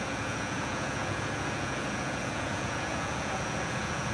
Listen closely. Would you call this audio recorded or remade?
remade